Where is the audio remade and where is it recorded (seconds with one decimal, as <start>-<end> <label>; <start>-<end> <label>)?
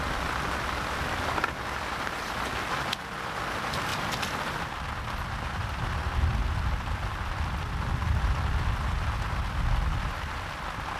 0.0-11.0 recorded